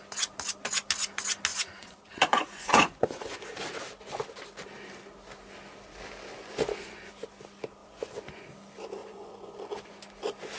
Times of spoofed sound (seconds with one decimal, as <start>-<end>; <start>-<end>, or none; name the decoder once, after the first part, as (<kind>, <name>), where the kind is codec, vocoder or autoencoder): 1.5-3.4 (vocoder, Vocos); 6.4-7.1; 7.8-8.4; 9.0-10.0